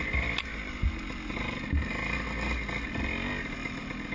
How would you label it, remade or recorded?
recorded